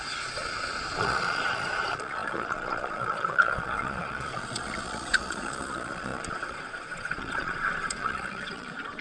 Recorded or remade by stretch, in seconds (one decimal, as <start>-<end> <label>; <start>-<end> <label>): 0.0-9.0 remade

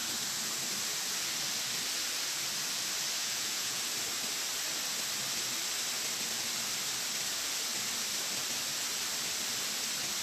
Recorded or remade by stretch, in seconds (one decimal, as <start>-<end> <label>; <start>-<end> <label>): 0.0-3.2 recorded; 3.2-3.8 remade; 3.8-10.2 recorded

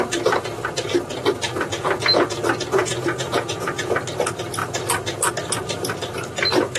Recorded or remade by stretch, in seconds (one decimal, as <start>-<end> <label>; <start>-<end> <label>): 0.0-2.8 recorded; 2.8-3.8 remade; 3.8-6.8 recorded

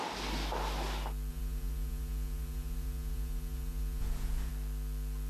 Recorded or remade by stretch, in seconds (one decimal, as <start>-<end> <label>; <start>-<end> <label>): 0.0-1.3 recorded; 1.3-4.5 remade; 4.5-5.3 recorded

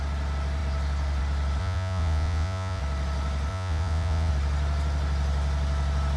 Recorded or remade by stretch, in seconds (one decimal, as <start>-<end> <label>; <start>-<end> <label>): 0.0-1.6 recorded; 1.6-2.8 remade; 2.8-3.5 recorded; 3.5-4.3 remade; 4.3-6.2 recorded

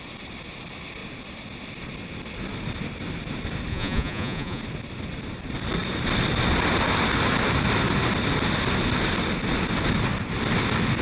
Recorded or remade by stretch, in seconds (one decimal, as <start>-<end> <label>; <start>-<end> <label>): 0.0-3.7 recorded; 3.7-4.6 remade; 4.6-11.0 recorded

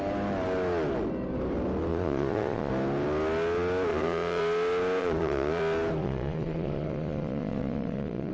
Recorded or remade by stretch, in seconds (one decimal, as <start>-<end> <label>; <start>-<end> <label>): 0.0-1.9 recorded; 1.9-2.7 remade; 2.7-3.9 recorded; 3.9-4.4 remade; 4.4-5.0 recorded; 5.0-5.6 remade; 5.6-6.0 recorded; 6.0-8.3 remade